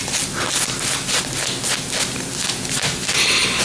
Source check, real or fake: real